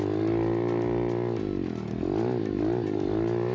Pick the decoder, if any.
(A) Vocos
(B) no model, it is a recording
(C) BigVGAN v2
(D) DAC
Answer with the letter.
B